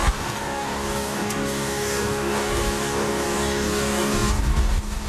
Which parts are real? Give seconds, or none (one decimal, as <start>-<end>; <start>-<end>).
none